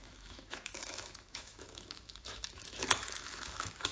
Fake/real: fake